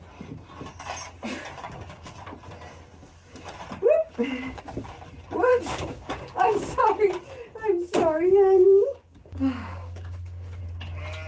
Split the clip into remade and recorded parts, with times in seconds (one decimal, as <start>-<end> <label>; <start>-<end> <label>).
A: 0.0-1.6 recorded; 1.6-2.1 remade; 2.1-4.0 recorded; 4.0-4.6 remade; 4.6-5.5 recorded; 5.5-6.8 remade; 6.8-8.0 recorded; 8.0-10.6 remade; 10.6-11.3 recorded